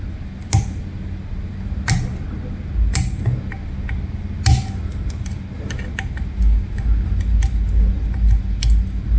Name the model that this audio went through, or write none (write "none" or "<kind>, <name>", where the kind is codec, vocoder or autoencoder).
none